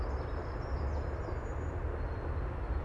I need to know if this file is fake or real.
real